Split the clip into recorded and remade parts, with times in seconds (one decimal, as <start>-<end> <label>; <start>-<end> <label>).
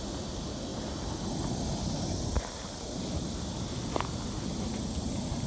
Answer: 0.0-5.5 recorded